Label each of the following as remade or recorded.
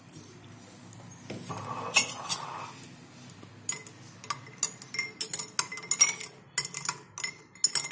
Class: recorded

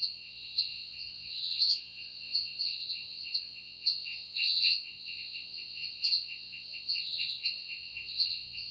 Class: remade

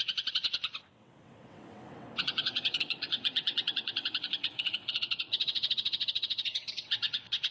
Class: remade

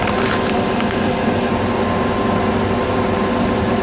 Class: recorded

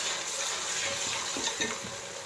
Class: recorded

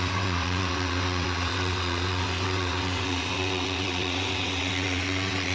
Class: remade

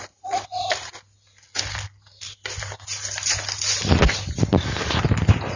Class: recorded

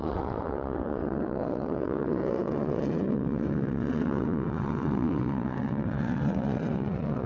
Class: remade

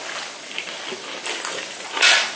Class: recorded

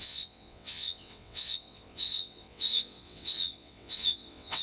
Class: remade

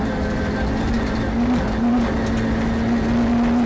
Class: recorded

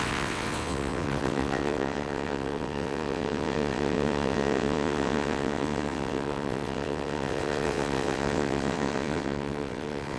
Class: remade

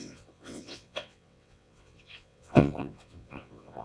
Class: remade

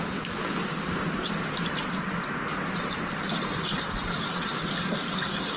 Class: recorded